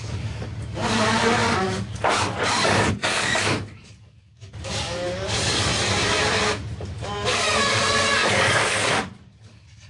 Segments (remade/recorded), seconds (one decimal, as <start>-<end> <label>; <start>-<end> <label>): 0.0-5.7 remade; 5.7-6.9 recorded; 6.9-9.9 remade